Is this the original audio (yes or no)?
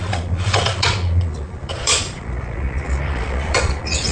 no